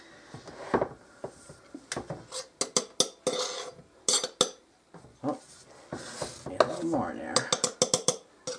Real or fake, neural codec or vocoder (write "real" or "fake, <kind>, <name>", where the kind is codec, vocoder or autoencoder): real